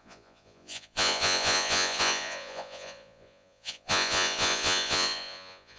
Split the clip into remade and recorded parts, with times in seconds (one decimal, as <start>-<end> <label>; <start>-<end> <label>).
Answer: 0.0-5.8 remade